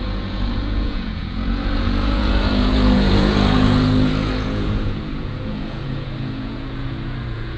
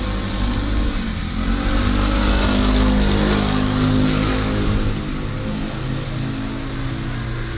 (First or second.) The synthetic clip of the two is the first